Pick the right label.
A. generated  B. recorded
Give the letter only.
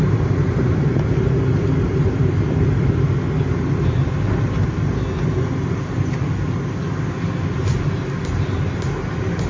B